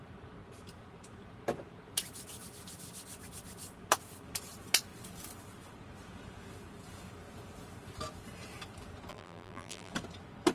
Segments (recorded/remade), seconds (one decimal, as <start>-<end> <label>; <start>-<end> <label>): 0.0-9.1 recorded; 9.1-9.9 remade; 9.9-10.5 recorded